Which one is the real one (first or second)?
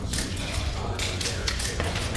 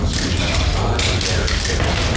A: second